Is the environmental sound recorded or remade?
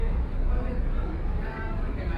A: remade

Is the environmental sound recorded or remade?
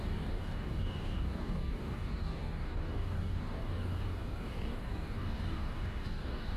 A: remade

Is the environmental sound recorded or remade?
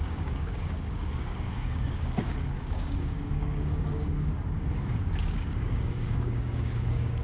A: remade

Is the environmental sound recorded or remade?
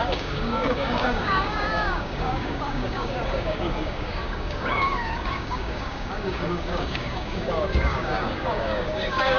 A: remade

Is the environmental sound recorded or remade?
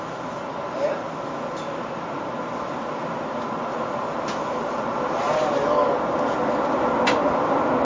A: recorded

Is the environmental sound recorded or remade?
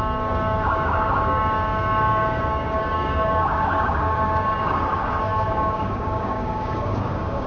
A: remade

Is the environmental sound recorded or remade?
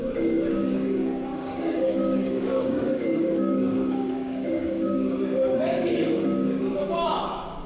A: remade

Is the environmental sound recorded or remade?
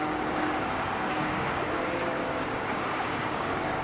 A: remade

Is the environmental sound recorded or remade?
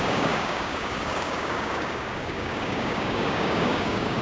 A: remade